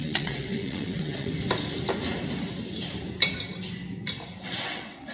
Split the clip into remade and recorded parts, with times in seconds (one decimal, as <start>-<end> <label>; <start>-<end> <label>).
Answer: 0.0-1.3 remade; 1.3-4.4 recorded; 4.4-5.1 remade